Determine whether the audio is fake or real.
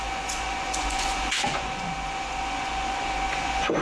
fake